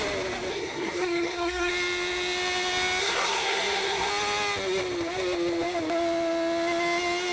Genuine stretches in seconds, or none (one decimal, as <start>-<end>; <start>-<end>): 0.0-0.5; 1.7-3.0; 4.1-7.3